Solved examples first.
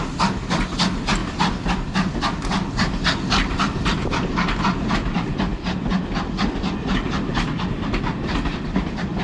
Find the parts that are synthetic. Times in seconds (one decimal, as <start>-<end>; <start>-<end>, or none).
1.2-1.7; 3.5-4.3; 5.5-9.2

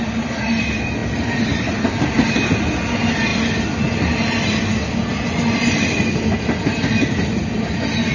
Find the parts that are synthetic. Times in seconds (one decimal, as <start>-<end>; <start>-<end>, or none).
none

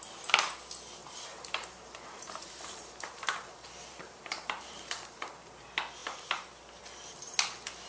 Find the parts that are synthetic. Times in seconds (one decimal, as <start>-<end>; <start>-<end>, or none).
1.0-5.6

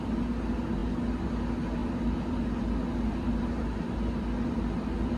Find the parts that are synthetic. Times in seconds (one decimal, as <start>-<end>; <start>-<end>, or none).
1.8-5.2

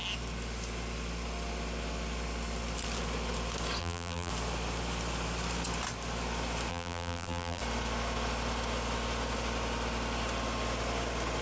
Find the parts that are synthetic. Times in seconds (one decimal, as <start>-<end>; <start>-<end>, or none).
3.8-4.3; 6.7-7.6